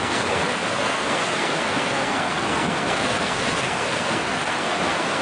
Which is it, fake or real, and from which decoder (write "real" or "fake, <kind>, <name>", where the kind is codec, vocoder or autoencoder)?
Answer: fake, codec, SNAC